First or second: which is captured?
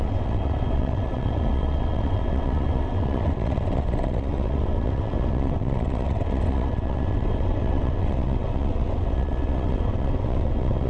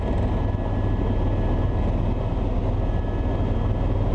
second